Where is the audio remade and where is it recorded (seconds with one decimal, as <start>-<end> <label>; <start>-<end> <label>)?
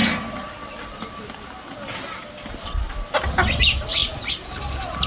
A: 0.0-5.1 recorded